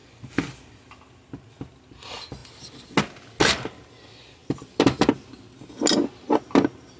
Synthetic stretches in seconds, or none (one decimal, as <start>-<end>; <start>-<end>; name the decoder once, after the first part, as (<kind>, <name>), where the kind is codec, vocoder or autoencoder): 0.0-0.7 (vocoder, BigVGAN v2)